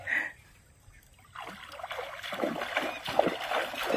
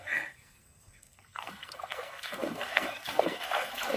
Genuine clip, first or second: first